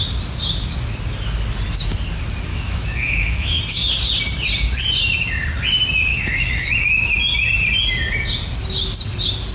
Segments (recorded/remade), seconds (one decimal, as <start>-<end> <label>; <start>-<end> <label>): 0.0-2.5 recorded; 2.5-3.6 remade; 3.6-6.1 recorded; 6.1-6.7 remade; 6.7-9.5 recorded

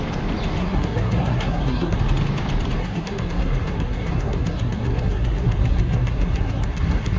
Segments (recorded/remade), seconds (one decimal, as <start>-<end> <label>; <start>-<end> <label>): 0.0-0.6 recorded; 0.6-2.0 remade; 2.0-2.8 recorded; 2.8-7.2 remade